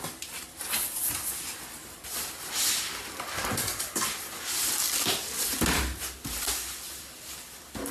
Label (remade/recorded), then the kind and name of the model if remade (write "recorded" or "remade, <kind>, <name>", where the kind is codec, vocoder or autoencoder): recorded